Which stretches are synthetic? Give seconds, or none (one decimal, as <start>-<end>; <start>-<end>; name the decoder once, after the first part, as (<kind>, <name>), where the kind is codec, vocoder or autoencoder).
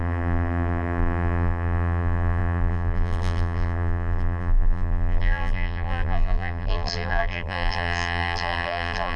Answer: 0.0-9.2 (vocoder, BigVGAN v2)